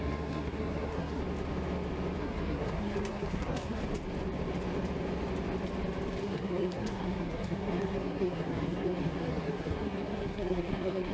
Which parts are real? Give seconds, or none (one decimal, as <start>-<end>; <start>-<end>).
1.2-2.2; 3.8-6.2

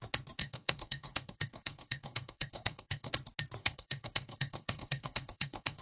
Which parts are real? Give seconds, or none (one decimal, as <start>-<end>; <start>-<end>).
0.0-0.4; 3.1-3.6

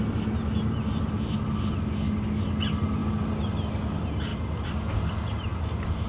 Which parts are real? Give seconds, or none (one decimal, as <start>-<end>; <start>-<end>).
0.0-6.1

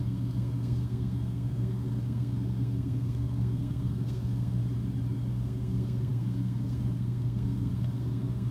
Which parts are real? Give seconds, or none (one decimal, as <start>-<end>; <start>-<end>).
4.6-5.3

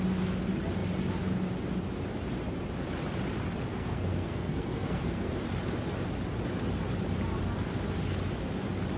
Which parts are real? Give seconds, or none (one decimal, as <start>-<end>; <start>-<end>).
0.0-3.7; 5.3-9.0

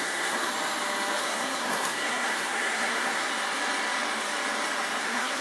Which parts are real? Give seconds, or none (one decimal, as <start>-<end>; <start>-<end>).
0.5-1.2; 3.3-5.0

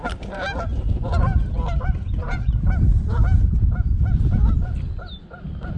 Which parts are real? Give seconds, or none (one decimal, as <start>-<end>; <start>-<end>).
0.0-5.8